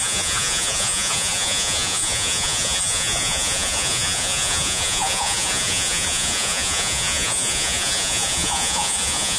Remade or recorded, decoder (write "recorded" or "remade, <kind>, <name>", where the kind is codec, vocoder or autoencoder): remade, vocoder, Vocos